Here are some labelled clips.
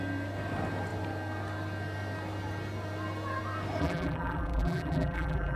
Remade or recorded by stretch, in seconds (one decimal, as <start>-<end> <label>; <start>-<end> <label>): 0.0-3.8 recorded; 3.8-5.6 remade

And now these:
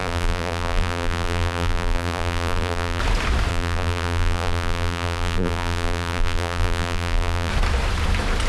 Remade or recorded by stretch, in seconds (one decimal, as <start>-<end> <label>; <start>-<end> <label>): 0.0-3.0 remade; 3.0-3.5 recorded; 3.5-7.5 remade; 7.5-8.5 recorded

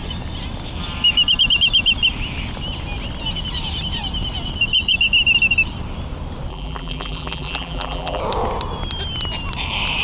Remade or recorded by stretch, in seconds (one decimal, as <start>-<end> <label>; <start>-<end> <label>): 0.0-6.5 recorded; 6.5-8.2 remade; 8.2-10.0 recorded

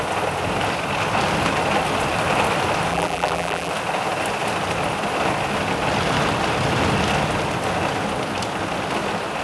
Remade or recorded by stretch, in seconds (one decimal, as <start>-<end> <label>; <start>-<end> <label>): 0.0-2.9 recorded; 2.9-3.7 remade; 3.7-9.4 recorded

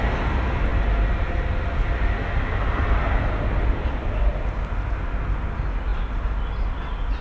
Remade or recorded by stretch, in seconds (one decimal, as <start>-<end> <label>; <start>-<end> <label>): 0.0-7.2 recorded